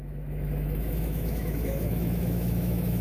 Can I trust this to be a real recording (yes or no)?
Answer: no